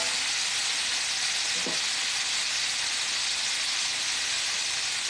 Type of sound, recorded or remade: recorded